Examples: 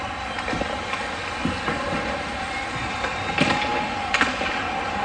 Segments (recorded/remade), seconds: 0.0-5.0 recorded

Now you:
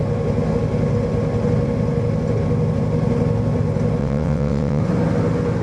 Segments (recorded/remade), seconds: 0.0-4.0 recorded; 4.0-4.8 remade; 4.8-5.6 recorded

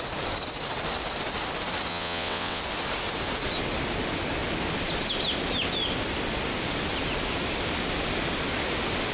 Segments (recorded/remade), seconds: 0.0-1.9 recorded; 1.9-2.6 remade; 2.6-9.1 recorded

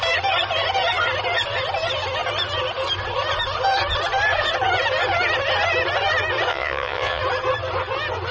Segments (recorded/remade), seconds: 0.0-6.5 recorded; 6.5-7.2 remade; 7.2-8.3 recorded